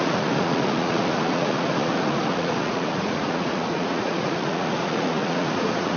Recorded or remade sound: remade